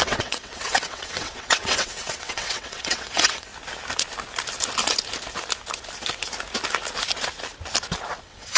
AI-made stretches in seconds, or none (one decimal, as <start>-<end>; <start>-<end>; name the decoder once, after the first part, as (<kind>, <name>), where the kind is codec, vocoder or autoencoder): 0.0-3.5 (vocoder, WaveNeXt); 8.2-8.6